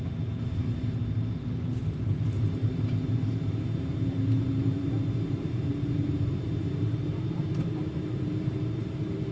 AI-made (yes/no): yes